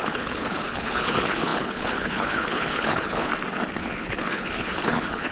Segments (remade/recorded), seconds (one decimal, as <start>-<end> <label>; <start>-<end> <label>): 0.0-3.3 remade; 3.3-3.8 recorded; 3.8-5.3 remade